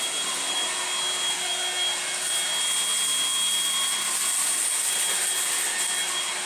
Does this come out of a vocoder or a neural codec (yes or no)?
no